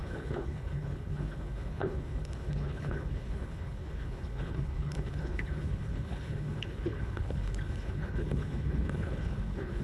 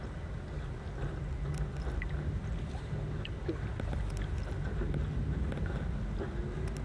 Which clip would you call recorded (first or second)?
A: second